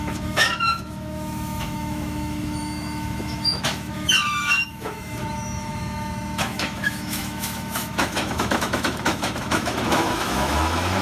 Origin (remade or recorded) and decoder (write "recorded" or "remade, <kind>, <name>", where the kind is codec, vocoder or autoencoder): remade, autoencoder, DAC-VAE